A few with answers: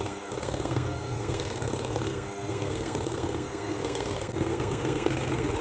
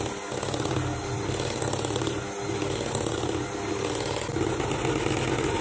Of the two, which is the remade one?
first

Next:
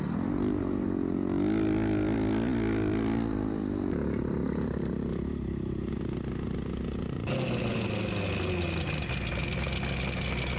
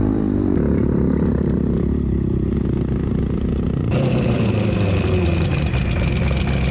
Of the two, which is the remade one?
second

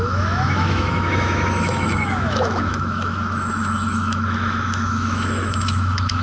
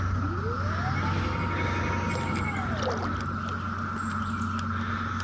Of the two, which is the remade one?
first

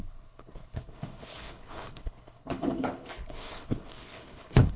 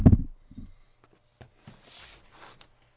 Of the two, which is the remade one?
first